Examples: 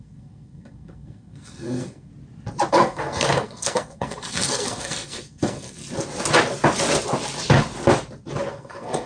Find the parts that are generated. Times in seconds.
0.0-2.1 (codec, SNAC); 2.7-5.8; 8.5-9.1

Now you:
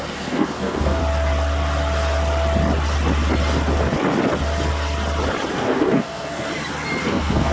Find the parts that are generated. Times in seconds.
0.0-1.0 (codec, SNAC); 5.5-6.5; 7.0-7.5